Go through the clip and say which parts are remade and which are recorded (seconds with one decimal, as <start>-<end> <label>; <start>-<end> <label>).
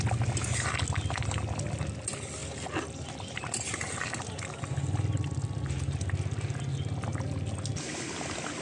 0.0-8.6 recorded